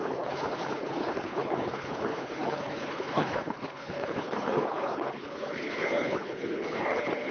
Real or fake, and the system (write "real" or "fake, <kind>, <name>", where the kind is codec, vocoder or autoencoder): fake, codec, HILCodec